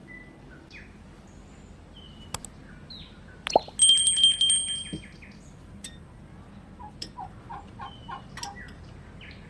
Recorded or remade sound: recorded